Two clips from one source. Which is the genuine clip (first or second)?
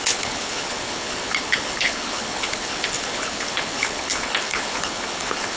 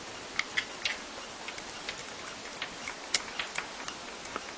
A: second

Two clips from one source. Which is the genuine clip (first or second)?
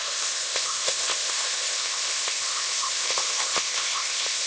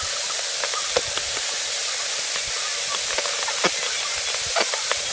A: second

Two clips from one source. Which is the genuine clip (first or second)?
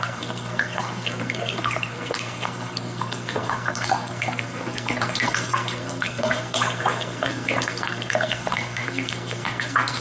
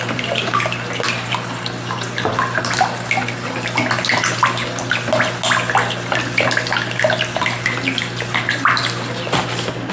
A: second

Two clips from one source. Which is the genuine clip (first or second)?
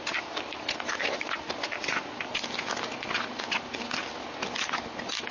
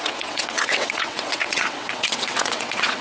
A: first